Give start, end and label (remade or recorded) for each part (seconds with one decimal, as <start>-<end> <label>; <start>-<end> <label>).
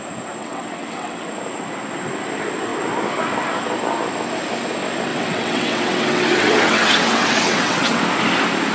0.0-0.4 recorded; 0.4-1.3 remade; 1.3-5.1 recorded; 5.1-8.0 remade; 8.0-8.7 recorded